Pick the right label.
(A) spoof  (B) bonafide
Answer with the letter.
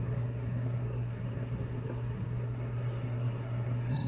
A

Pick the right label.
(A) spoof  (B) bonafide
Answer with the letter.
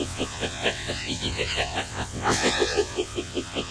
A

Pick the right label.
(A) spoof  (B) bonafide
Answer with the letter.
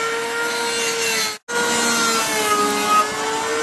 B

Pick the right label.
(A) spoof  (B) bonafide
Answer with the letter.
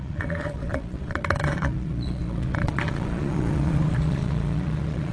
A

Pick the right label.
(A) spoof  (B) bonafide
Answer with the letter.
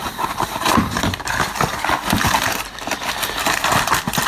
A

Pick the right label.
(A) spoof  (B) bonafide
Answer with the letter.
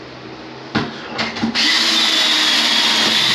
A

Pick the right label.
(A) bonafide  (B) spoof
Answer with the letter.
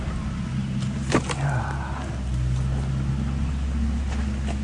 A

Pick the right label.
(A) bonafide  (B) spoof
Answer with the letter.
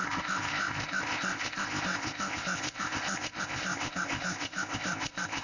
B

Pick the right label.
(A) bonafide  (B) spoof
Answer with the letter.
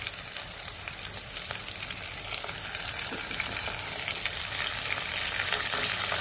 A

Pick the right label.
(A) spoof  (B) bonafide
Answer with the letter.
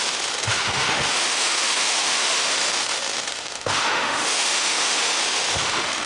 A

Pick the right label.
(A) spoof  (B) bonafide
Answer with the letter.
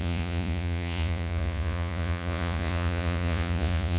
A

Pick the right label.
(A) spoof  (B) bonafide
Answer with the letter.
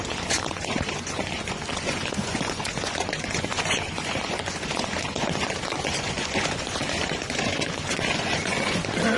A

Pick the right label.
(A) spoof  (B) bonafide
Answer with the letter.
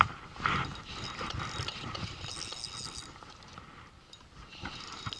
B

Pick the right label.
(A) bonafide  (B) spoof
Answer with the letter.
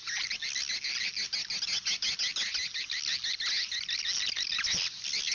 A